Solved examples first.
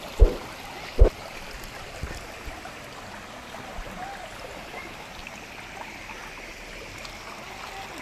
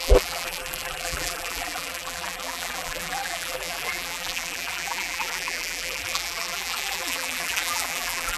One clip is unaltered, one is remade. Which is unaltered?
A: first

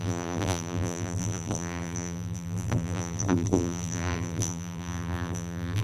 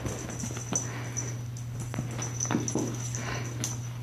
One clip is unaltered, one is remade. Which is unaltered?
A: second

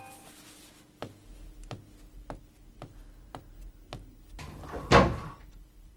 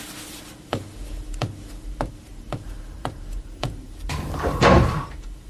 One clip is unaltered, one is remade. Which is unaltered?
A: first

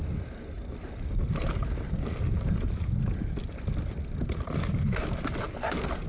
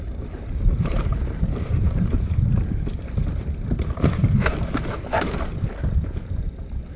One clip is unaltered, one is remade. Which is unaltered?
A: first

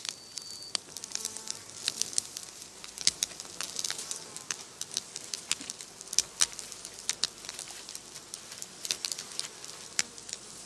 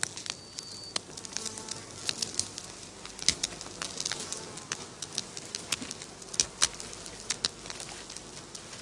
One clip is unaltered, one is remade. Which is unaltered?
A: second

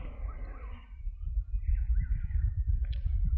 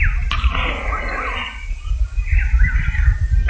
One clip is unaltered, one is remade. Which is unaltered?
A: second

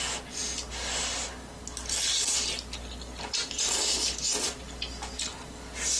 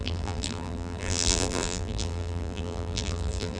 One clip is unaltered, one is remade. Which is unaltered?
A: first